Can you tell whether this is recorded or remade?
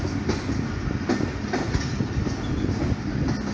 recorded